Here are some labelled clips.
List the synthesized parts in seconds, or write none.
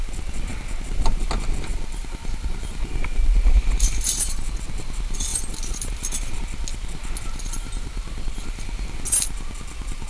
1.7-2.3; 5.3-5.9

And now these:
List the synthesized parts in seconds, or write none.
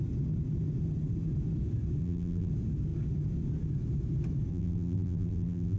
2.0-2.5; 4.5-5.8